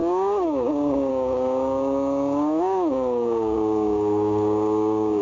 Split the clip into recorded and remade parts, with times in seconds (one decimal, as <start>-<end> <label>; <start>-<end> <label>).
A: 0.0-5.2 remade